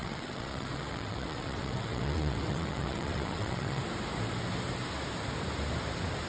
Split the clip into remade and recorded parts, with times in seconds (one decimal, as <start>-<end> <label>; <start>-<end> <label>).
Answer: 0.0-3.8 remade; 3.8-6.3 recorded